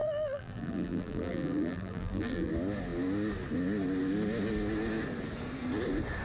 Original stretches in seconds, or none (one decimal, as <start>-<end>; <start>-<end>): 2.5-6.2